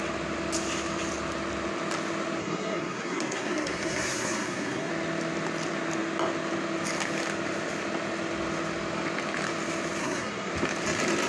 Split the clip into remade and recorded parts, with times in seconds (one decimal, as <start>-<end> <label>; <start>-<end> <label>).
0.0-2.4 recorded; 2.4-4.9 remade; 4.9-10.0 recorded; 10.0-10.5 remade; 10.5-11.3 recorded

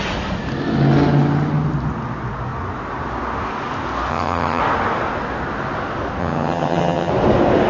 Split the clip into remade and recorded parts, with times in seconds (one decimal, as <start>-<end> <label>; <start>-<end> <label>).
0.0-4.1 recorded; 4.1-4.6 remade; 4.6-6.2 recorded; 6.2-7.1 remade; 7.1-7.7 recorded